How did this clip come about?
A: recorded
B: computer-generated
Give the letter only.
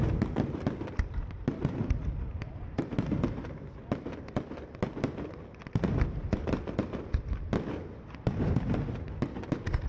B